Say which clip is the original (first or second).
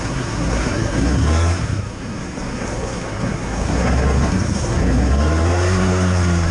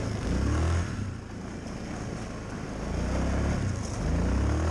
second